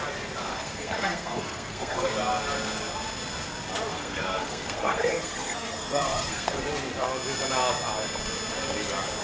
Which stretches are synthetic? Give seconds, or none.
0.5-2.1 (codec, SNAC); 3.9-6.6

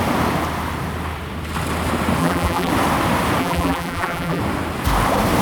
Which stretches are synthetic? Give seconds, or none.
2.2-2.7 (vocoder, BigVGAN v2); 3.4-4.4

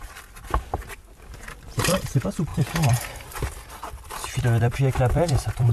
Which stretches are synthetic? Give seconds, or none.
0.0-0.4 (vocoder, BigVGAN v2); 1.6-5.7

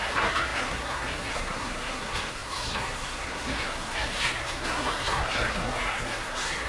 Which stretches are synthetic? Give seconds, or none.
0.0-6.7 (codec, SNAC)

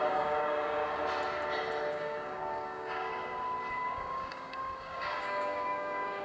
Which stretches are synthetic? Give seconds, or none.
0.0-0.8 (codec, DAC); 1.9-3.1; 3.7-6.2